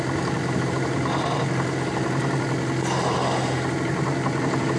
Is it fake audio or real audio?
real